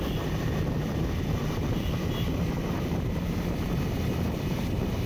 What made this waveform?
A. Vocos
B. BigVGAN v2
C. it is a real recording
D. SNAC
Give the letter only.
B